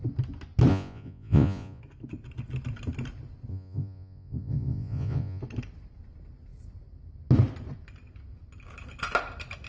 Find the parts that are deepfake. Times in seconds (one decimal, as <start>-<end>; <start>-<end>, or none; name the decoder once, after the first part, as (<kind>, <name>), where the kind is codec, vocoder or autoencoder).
0.7-1.8 (vocoder, Vocos); 3.5-5.4